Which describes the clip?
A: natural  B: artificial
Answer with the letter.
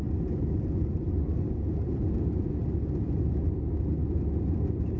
A